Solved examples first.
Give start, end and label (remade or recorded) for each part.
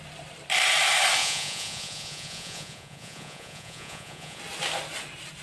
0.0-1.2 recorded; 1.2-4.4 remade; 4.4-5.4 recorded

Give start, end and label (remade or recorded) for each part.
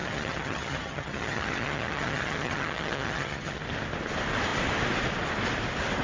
0.0-3.6 remade; 3.6-6.0 recorded